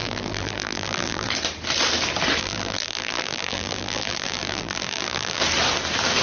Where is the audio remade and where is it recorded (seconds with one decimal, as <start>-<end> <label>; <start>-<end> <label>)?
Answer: 0.0-1.3 remade; 1.3-2.4 recorded; 2.4-5.4 remade; 5.4-6.2 recorded